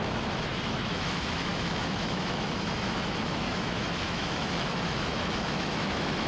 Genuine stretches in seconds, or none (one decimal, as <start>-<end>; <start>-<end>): none